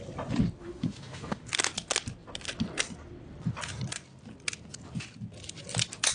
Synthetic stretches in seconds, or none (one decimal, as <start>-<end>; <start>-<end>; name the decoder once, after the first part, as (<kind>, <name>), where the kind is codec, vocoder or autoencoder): 0.6-1.5 (autoencoder, DAC-VAE)